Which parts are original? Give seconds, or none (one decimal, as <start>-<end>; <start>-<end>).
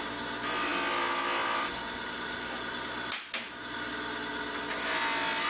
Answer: 0.0-5.5